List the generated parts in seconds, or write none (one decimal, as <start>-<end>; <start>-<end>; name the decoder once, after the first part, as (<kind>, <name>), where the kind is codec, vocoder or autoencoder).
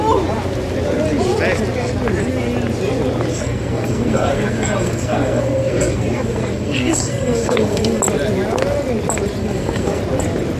3.3-8.0 (codec, SNAC); 9.4-10.0